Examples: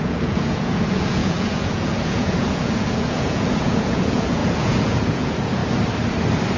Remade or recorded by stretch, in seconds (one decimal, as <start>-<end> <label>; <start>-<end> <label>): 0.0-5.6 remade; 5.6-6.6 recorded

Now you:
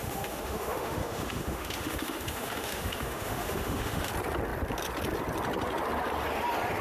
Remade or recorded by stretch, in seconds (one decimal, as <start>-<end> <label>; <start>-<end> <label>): 0.0-4.1 remade; 4.1-6.8 recorded

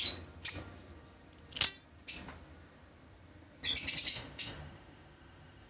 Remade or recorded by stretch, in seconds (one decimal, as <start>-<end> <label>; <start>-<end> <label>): 0.0-4.1 recorded; 4.1-5.7 remade